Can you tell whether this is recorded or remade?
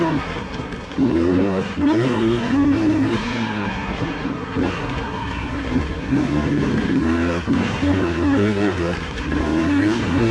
remade